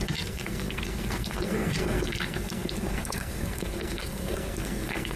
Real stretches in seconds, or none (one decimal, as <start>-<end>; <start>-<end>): none